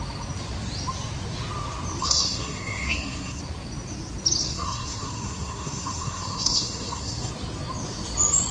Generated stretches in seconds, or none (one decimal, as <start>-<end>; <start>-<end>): 2.0-3.4; 4.4-7.3